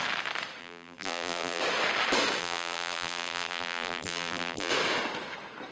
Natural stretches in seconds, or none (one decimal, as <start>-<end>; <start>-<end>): 0.0-0.6; 1.6-2.4; 4.7-5.7